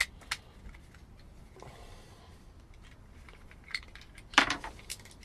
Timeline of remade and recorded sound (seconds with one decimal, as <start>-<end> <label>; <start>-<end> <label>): 0.0-2.3 recorded; 2.3-4.7 remade; 4.7-5.2 recorded